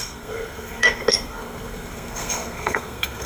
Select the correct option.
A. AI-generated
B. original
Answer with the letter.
A